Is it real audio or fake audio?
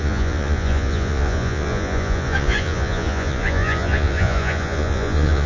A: fake